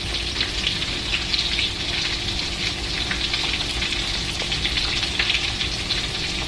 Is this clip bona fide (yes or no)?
yes